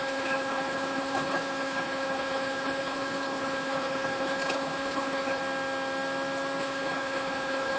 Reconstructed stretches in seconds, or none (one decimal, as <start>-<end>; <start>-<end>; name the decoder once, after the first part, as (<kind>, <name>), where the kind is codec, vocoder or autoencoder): 0.0-5.4 (codec, HILCodec); 6.6-7.8